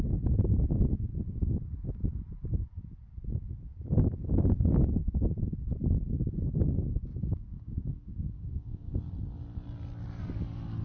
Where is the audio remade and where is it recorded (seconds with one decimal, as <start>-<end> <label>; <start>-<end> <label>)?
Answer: 0.0-7.1 recorded; 7.1-9.0 remade; 9.0-10.8 recorded